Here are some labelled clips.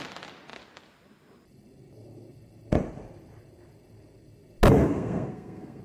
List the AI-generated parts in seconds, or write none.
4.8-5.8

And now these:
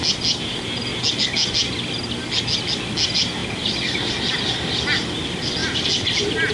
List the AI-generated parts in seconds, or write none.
none

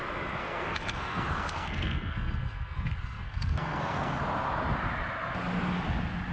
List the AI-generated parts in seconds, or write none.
0.4-4.2

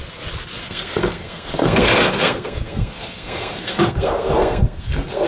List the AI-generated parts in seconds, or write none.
0.6-5.3

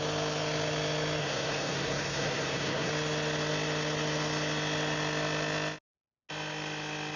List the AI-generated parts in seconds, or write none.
1.2-2.9

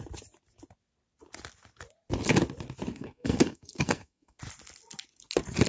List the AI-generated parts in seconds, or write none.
2.9-4.4